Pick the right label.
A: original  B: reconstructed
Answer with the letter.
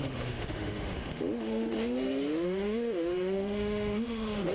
B